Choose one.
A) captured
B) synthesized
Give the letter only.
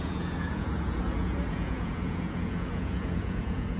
B